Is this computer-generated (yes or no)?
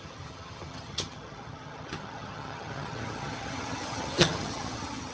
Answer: yes